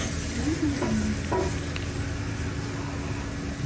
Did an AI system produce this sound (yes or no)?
no